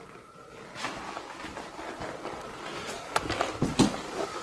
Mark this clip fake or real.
real